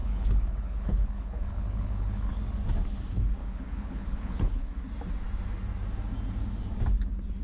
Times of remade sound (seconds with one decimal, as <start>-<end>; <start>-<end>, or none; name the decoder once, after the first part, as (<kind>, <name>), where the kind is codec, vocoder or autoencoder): 0.0-2.3 (codec, HILCodec); 3.4-4.8